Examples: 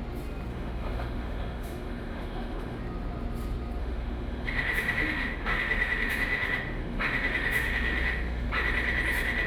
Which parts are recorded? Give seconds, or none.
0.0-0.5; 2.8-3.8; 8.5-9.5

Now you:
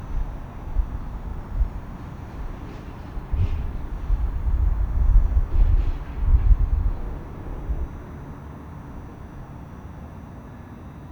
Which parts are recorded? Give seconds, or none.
0.0-1.3; 5.7-6.3; 6.9-9.1; 10.4-11.1

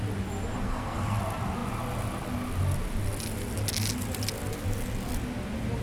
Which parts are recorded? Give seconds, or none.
0.0-0.6; 1.2-5.8